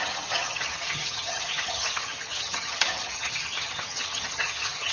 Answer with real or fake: fake